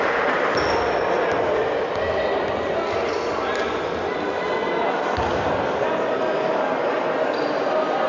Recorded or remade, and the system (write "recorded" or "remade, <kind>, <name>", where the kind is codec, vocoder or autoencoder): recorded